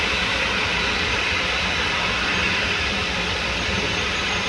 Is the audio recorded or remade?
recorded